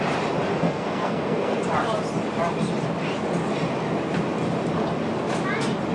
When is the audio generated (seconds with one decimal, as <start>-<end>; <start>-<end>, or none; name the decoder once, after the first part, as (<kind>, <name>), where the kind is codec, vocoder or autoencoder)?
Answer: 0.5-1.7 (codec, SNAC)